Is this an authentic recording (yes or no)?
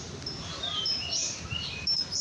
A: no